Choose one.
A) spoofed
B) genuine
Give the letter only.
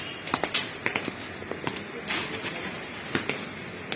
B